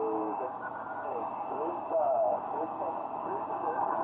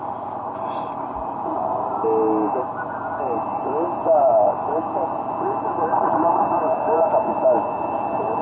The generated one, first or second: first